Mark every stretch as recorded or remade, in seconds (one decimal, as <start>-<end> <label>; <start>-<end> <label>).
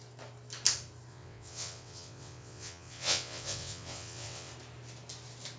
0.0-1.1 recorded; 1.1-4.5 remade; 4.5-5.6 recorded